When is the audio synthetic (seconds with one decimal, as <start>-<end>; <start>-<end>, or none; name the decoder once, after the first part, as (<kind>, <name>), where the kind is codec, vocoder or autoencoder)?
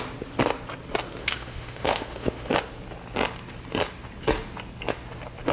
1.2-2.6 (autoencoder, DAC-VAE)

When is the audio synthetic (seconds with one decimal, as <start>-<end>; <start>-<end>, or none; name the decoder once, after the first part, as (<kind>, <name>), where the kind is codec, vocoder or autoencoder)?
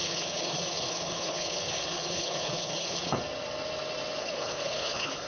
0.0-3.2 (codec, HILCodec); 4.2-5.3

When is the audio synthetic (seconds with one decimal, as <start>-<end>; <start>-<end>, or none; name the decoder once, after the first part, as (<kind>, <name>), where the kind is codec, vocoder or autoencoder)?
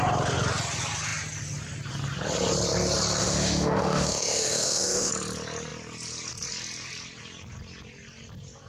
3.2-5.1 (autoencoder, DAC-VAE)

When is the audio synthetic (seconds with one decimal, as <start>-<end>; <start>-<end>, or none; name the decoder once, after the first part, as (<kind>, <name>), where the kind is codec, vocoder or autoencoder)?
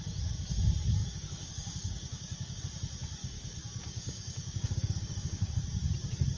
1.0-2.6 (codec, DAC); 3.2-5.5